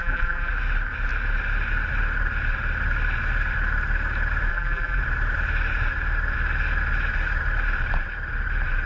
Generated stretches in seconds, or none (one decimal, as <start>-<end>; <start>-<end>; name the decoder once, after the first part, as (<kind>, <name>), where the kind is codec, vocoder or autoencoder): 0.0-0.5 (vocoder, BigVGAN v2); 4.5-5.0